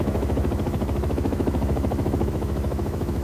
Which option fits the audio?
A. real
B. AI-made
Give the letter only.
B